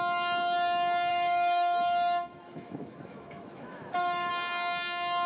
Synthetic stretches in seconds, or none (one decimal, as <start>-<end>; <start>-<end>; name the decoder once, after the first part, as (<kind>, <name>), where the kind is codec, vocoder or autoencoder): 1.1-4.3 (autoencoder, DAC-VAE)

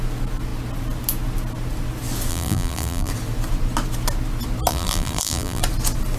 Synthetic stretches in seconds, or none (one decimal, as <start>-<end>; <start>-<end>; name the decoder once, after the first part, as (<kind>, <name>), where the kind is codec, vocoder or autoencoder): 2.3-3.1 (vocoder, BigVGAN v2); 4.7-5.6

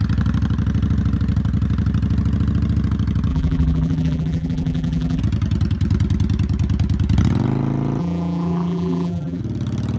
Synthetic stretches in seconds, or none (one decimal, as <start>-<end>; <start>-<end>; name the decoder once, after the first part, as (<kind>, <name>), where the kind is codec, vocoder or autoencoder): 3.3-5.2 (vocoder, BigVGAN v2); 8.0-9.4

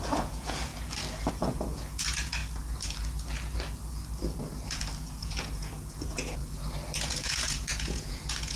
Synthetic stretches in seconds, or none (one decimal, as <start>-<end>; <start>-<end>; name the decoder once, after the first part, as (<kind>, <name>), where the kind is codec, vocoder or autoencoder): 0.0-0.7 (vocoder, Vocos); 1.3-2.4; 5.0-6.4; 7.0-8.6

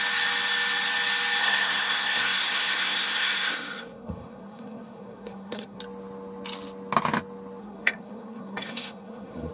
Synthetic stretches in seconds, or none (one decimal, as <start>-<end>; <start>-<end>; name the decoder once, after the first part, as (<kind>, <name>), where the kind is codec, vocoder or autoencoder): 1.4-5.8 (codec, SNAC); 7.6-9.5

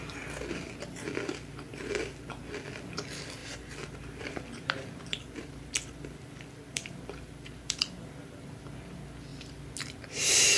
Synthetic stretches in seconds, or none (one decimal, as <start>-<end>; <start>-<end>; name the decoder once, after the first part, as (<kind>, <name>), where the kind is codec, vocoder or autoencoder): 1.7-2.4 (vocoder, BigVGAN v2); 3.4-8.6

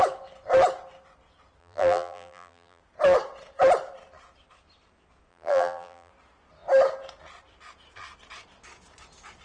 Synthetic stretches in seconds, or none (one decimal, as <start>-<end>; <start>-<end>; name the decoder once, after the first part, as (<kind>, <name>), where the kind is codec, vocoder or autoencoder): 1.6-2.8 (vocoder, BigVGAN v2); 5.3-6.1